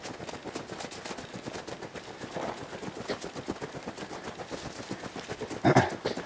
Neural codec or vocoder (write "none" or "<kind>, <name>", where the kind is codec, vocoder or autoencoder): none